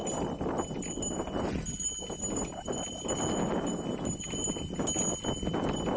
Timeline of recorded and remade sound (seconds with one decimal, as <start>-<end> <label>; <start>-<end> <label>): 0.0-6.0 recorded